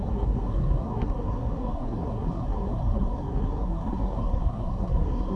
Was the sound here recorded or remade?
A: remade